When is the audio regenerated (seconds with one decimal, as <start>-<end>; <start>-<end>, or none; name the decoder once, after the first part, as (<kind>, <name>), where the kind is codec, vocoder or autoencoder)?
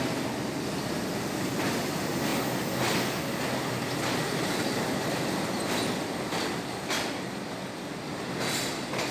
none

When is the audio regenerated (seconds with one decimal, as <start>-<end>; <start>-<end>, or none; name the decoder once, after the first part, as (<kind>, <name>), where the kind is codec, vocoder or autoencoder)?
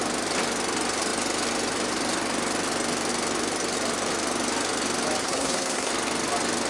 5.2-5.9 (codec, SNAC)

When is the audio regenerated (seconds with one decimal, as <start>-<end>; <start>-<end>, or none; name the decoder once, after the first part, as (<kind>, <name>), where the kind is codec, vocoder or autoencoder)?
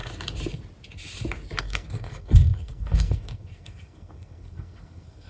1.6-5.3 (codec, SNAC)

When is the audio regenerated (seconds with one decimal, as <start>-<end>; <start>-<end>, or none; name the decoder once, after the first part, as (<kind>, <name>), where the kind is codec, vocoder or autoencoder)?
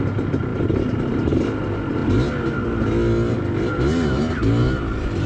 none